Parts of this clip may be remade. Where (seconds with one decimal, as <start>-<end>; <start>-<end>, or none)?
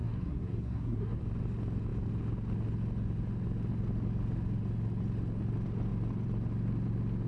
0.0-1.2